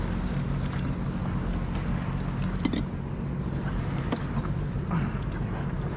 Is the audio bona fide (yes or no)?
yes